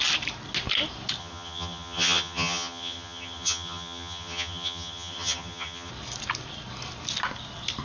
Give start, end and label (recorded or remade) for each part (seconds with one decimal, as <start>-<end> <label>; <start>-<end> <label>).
0.0-1.2 recorded; 1.2-5.9 remade; 5.9-7.8 recorded